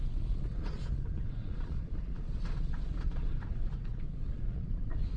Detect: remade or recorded remade